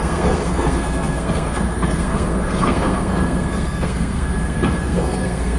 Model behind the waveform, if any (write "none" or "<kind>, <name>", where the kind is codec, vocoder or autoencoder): codec, SNAC